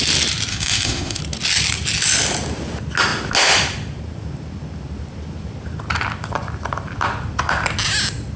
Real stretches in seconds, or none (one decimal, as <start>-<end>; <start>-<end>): 0.0-0.5; 1.2-8.4